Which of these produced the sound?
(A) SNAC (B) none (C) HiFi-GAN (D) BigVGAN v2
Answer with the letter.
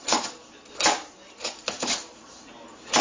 D